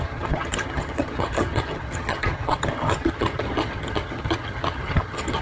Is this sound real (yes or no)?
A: no